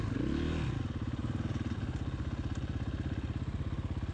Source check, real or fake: real